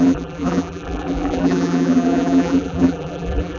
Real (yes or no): no